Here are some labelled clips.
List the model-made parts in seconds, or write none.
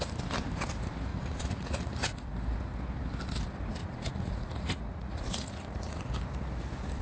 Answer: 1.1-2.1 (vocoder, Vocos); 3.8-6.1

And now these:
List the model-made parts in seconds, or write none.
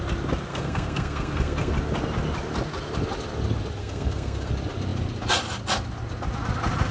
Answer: 0.5-1.7 (codec, SNAC); 3.8-4.5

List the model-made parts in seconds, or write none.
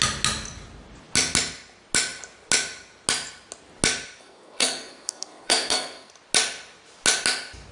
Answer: 4.2-6.1 (codec, SNAC)